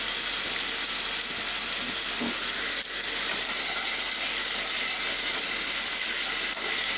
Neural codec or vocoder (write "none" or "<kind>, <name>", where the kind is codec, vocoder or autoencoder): none